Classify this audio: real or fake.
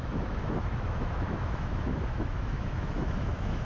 fake